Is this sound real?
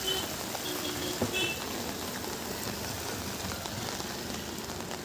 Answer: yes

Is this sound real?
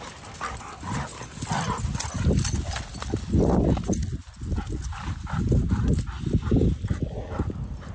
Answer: yes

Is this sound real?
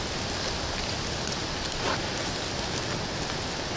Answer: yes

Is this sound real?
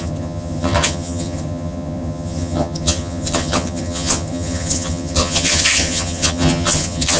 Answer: no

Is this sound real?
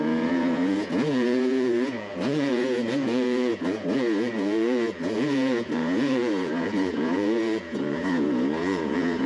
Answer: no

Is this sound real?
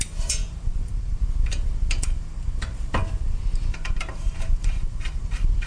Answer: no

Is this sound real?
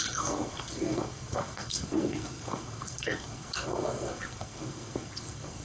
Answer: no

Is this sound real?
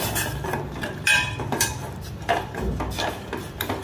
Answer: no